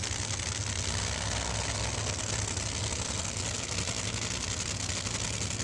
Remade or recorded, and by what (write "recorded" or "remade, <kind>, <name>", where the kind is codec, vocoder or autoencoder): recorded